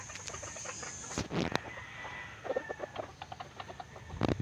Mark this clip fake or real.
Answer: real